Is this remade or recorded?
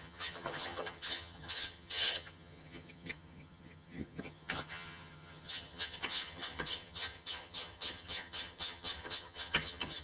remade